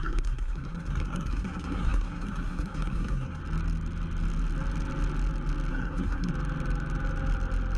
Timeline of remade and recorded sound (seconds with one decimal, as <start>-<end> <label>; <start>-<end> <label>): 0.0-3.4 remade; 3.4-5.7 recorded; 5.7-6.3 remade; 6.3-7.8 recorded